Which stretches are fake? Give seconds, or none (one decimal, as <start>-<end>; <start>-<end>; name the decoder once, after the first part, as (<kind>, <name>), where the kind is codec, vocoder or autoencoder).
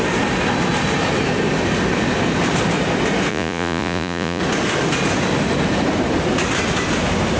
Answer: 3.3-4.4 (vocoder, Vocos)